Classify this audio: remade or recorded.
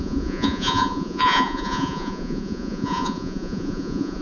remade